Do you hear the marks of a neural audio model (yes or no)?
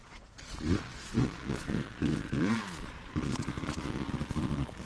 yes